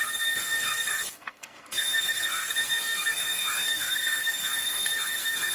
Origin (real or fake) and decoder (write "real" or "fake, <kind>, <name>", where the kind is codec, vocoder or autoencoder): fake, codec, SNAC